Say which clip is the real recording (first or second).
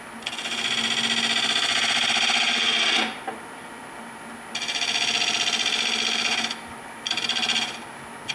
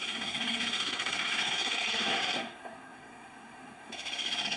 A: first